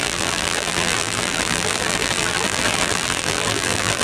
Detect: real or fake fake